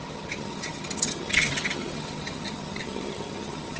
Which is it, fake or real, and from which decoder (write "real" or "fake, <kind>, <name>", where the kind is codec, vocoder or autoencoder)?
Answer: fake, vocoder, HiFi-GAN